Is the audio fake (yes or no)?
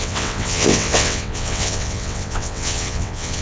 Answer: yes